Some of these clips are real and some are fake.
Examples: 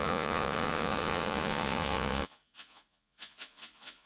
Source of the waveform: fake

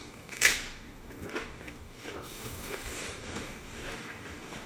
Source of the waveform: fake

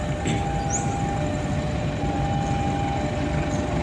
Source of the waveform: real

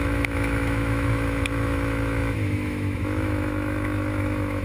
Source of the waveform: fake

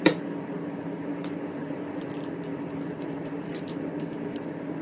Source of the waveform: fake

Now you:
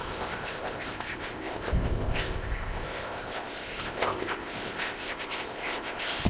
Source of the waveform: fake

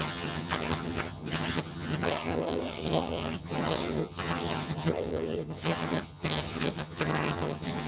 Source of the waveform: fake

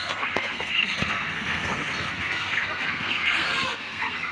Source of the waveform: fake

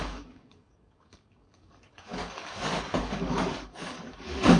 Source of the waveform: fake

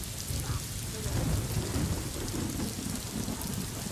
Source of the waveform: real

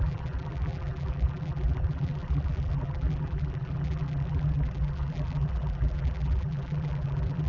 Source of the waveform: fake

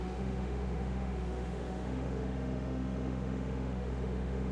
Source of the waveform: fake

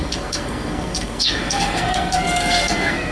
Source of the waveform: fake